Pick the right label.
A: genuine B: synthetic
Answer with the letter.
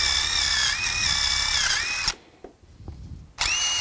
A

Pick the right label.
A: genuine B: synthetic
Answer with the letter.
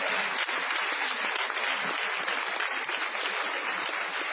A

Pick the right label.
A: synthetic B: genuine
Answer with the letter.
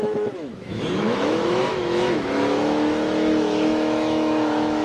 A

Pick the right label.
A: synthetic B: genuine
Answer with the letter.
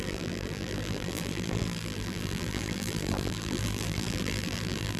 A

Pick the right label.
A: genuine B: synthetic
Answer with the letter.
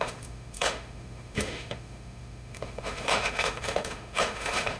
B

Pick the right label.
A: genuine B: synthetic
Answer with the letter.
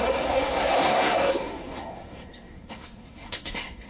B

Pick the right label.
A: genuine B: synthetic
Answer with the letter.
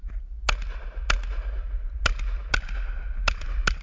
A